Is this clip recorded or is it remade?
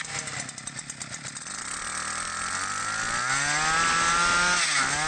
recorded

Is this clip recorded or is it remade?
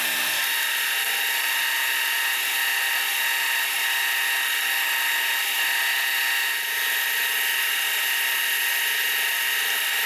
recorded